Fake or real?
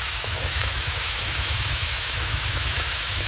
fake